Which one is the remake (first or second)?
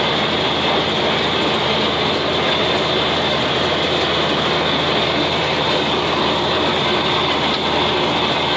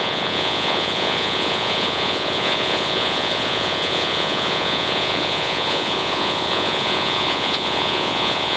second